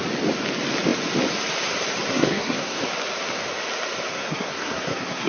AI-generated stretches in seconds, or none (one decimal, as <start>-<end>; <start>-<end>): 2.1-2.8; 4.1-5.3